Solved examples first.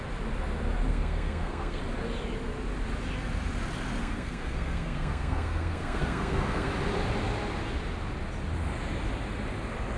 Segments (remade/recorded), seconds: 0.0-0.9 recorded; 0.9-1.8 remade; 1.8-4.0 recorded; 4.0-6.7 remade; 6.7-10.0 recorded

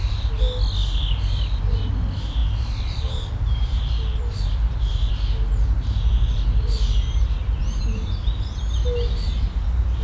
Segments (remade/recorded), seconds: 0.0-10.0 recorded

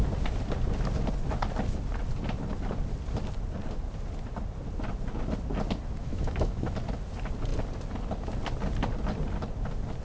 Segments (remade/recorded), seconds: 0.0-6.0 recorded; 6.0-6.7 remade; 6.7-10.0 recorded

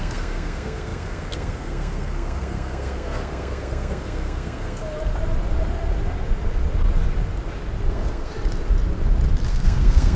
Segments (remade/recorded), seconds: 0.0-4.8 remade; 4.8-7.9 recorded; 7.9-8.3 remade; 8.3-9.5 recorded; 9.5-10.2 remade

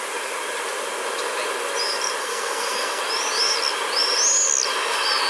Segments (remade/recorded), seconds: 0.0-2.2 recorded; 2.2-3.0 remade; 3.0-5.3 recorded